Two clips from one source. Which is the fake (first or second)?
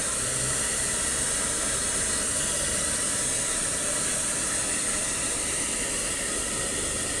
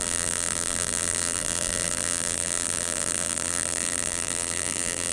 second